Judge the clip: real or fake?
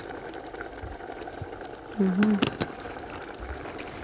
real